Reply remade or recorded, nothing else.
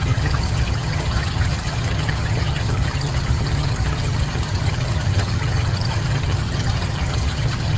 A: remade